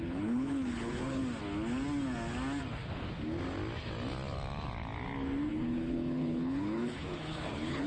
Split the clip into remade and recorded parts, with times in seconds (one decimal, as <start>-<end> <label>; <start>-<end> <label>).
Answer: 0.0-1.2 remade; 1.2-5.5 recorded; 5.5-7.9 remade